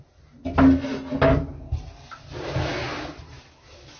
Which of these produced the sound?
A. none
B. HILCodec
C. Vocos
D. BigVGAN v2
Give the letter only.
A